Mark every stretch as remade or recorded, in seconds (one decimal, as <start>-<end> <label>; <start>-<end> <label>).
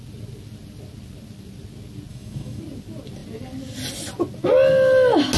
0.0-2.1 recorded; 2.1-2.6 remade; 2.6-5.4 recorded